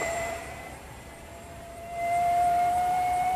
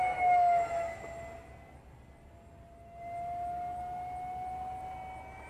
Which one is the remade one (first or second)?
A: first